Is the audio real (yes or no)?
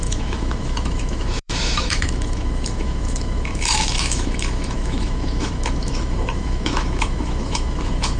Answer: no